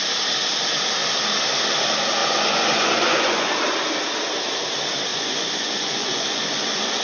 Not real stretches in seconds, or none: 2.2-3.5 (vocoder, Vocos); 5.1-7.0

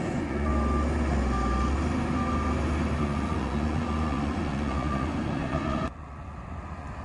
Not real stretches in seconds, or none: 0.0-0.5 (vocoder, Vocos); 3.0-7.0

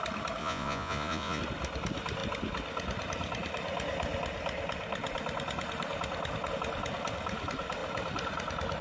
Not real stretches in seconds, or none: 0.4-1.4 (vocoder, Vocos)

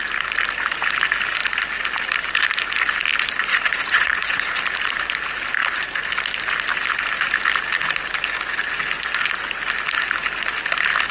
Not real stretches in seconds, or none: 3.5-4.6 (vocoder, Vocos)

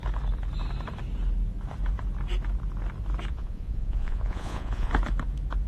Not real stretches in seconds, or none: 3.3-4.9 (vocoder, Vocos)